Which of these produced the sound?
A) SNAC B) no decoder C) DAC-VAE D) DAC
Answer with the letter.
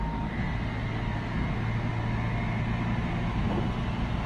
B